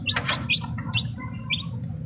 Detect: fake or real real